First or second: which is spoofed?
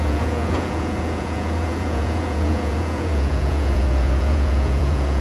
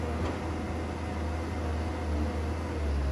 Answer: first